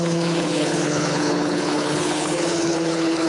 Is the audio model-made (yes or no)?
yes